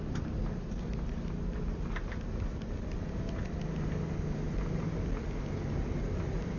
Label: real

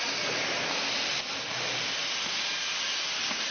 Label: real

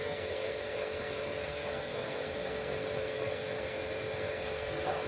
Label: fake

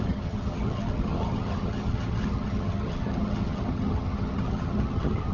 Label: fake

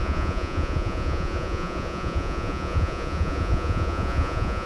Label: fake